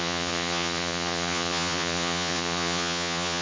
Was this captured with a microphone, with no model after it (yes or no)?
no